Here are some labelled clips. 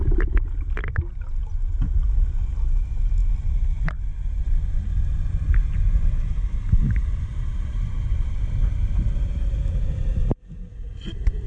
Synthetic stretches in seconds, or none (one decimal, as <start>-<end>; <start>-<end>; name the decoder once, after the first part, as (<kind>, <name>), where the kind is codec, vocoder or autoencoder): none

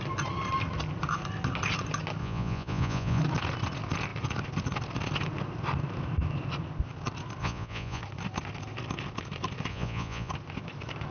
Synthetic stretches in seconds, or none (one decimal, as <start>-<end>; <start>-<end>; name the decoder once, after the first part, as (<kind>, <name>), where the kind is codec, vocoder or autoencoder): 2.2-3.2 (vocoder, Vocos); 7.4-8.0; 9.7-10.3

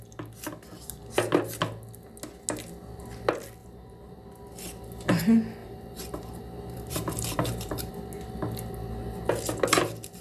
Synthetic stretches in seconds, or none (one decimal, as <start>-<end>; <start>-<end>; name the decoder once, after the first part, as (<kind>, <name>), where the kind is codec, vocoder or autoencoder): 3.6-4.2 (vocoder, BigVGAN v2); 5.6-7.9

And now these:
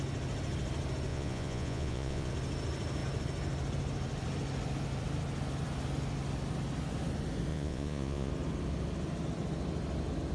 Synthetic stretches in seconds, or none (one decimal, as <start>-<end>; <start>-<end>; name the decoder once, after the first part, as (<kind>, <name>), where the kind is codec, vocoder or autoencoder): 1.1-2.3 (vocoder, Vocos); 7.5-8.3

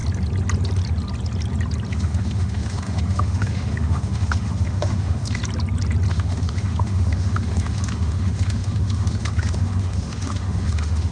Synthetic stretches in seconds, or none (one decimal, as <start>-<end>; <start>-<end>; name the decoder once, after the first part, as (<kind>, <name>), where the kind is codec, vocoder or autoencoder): 1.9-5.4 (autoencoder, DAC-VAE); 6.1-11.1